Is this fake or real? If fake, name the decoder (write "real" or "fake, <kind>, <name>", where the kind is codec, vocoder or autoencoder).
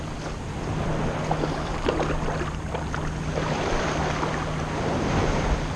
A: real